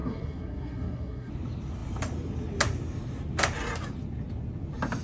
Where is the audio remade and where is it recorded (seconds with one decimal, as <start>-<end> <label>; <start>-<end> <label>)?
0.0-1.3 remade; 1.3-5.0 recorded